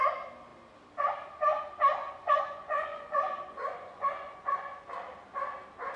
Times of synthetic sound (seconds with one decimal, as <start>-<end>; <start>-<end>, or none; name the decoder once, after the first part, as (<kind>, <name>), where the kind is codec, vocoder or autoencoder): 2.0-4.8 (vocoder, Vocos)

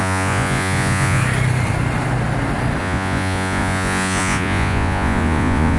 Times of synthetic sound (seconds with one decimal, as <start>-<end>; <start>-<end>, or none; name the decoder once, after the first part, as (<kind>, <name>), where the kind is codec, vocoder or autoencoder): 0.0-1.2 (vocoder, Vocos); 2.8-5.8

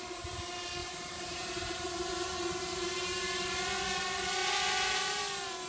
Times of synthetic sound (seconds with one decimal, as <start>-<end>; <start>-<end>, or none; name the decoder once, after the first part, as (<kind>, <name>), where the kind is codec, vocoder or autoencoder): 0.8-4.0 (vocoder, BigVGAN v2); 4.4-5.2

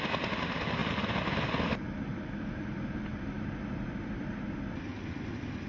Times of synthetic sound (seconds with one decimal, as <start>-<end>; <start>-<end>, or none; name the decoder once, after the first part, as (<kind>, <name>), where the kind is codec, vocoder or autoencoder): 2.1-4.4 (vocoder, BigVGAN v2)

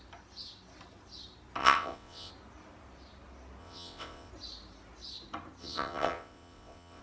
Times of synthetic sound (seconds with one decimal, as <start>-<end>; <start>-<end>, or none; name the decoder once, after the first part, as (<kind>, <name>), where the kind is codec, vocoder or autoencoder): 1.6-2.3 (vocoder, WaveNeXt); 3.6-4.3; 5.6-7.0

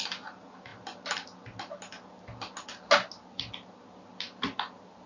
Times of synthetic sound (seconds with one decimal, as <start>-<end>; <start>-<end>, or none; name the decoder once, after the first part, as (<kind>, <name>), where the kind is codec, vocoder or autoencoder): none

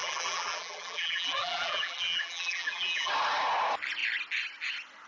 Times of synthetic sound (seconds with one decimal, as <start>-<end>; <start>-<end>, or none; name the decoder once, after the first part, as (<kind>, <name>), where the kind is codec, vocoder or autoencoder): 0.0-3.1 (vocoder, BigVGAN v2)

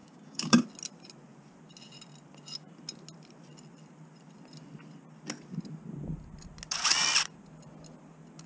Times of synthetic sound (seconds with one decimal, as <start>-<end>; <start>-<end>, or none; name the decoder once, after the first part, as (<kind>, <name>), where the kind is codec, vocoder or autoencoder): 0.0-0.6 (codec, DAC)